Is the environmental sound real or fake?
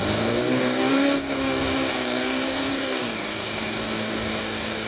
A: fake